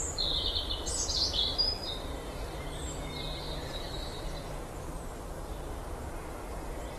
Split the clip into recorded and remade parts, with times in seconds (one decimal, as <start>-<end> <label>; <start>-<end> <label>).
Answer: 0.0-1.5 recorded; 1.5-5.7 remade; 5.7-7.0 recorded